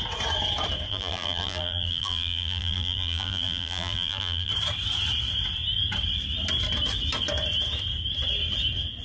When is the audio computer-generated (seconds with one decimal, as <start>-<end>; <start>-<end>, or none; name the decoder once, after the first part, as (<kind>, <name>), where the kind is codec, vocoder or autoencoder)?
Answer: 0.9-4.5 (vocoder, BigVGAN v2)